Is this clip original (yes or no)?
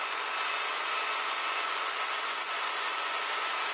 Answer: no